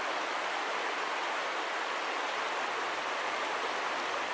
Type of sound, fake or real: real